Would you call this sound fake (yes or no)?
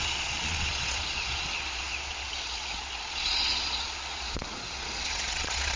yes